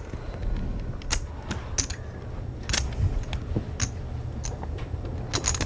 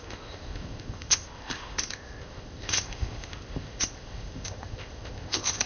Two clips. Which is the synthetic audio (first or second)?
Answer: second